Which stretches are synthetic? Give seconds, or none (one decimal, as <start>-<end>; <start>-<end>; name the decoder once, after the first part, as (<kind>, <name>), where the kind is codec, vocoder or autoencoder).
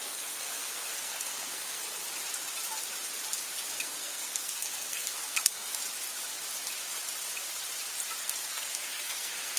0.0-2.0 (codec, SNAC); 3.8-5.8; 8.2-9.6